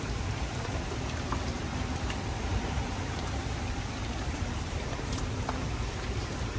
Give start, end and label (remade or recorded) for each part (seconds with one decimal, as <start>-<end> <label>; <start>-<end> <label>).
0.0-2.5 recorded; 2.5-6.6 remade